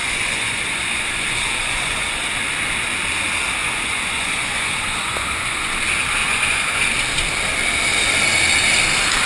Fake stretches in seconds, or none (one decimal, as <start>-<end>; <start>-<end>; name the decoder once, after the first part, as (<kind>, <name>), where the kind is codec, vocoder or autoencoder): 0.0-2.3 (vocoder, Vocos); 3.6-5.7; 6.2-6.8